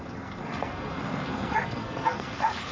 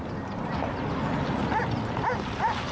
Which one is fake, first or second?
first